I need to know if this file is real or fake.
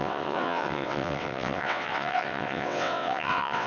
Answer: fake